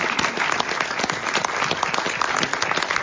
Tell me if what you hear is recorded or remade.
recorded